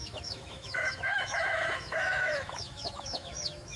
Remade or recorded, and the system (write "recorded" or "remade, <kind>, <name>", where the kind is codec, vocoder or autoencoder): remade, autoencoder, DAC-VAE